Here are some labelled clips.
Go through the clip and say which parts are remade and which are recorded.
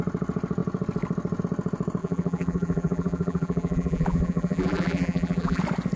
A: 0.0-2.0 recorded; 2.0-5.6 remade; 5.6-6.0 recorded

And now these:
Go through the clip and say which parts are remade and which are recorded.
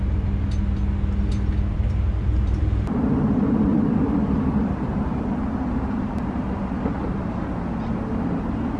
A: 0.0-1.7 recorded; 1.7-2.6 remade; 2.6-3.7 recorded; 3.7-6.8 remade; 6.8-8.8 recorded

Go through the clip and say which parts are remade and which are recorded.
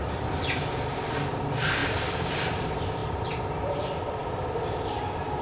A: 0.0-1.8 remade; 1.8-2.4 recorded; 2.4-5.4 remade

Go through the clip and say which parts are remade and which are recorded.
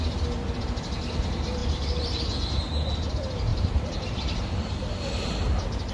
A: 0.0-1.6 recorded; 1.6-2.2 remade; 2.2-3.5 recorded; 3.5-4.7 remade; 4.7-5.9 recorded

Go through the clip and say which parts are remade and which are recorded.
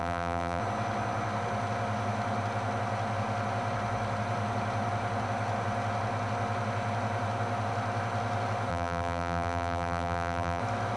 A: 0.0-0.6 remade; 0.6-8.7 recorded; 8.7-10.6 remade; 10.6-11.0 recorded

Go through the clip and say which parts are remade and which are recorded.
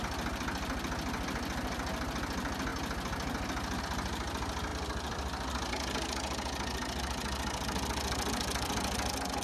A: 0.0-4.7 recorded; 4.7-5.7 remade; 5.7-9.4 recorded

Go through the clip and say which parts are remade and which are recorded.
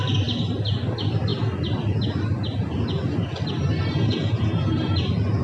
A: 0.0-1.3 remade; 1.3-4.5 recorded; 4.5-5.4 remade